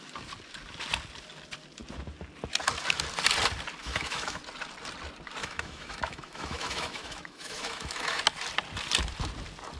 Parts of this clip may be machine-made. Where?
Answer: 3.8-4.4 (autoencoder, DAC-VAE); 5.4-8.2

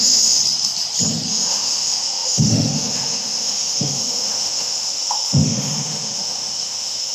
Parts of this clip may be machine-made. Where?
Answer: 0.0-0.4 (autoencoder, DAC-VAE); 1.3-7.1